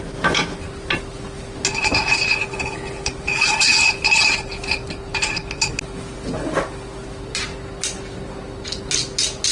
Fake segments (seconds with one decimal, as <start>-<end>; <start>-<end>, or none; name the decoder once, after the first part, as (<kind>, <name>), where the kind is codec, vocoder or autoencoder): 2.5-3.1 (codec, HILCodec)